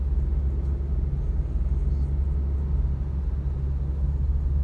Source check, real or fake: real